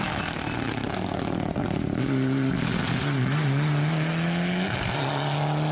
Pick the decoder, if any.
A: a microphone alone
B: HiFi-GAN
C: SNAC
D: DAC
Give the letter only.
A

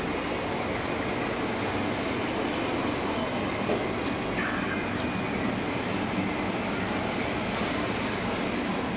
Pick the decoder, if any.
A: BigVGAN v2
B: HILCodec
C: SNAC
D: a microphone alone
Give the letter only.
D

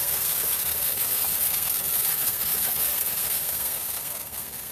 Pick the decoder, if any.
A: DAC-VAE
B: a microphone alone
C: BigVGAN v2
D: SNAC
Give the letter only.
D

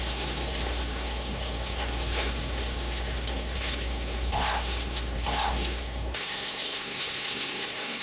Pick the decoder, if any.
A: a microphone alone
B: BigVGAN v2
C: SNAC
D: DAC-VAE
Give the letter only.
C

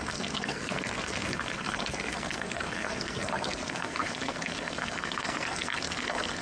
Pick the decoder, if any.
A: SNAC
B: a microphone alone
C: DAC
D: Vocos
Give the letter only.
A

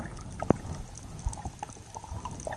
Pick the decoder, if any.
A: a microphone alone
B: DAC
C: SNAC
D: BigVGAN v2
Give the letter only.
A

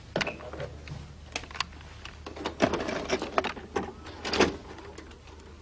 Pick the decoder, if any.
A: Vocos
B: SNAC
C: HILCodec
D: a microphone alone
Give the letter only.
D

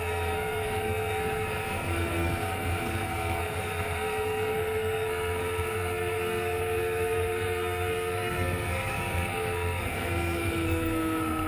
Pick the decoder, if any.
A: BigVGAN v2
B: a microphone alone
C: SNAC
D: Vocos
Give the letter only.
C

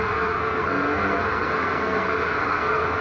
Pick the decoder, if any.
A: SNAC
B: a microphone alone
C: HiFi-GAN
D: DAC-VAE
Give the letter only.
A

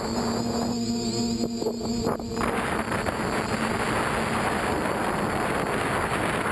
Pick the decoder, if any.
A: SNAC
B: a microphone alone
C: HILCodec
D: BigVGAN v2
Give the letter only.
B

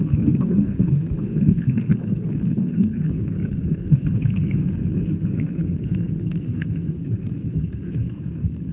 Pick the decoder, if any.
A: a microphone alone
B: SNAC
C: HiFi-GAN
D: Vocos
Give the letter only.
B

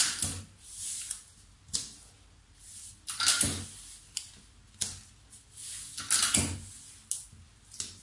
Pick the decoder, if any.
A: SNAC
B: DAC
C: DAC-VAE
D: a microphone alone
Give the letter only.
D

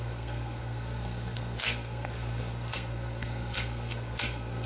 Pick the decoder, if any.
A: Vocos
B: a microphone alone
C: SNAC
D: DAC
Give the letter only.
C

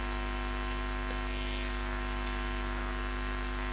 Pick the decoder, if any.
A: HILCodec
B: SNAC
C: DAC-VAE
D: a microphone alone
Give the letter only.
D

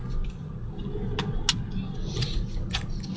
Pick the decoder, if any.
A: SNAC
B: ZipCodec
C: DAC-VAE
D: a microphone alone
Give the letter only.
D